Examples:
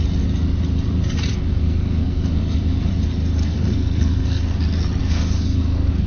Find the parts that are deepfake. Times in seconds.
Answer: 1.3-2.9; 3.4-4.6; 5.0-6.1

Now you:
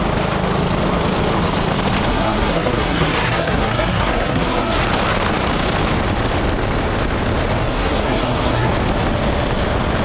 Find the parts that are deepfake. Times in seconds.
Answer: 2.1-4.8; 7.6-8.7

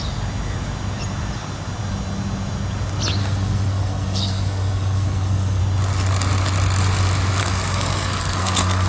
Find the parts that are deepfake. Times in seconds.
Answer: 3.2-5.6; 7.4-8.9

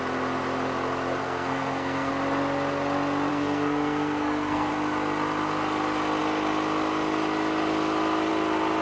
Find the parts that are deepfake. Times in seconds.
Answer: 1.2-2.1; 3.3-4.7

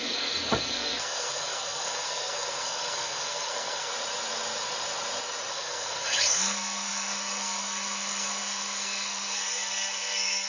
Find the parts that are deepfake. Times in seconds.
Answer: 0.0-3.9; 5.5-10.5

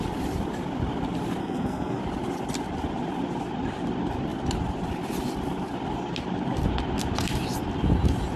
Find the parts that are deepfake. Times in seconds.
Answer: 1.4-2.0